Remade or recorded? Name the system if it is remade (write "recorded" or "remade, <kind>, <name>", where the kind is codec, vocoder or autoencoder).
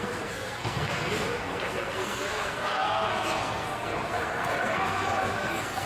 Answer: remade, codec, SNAC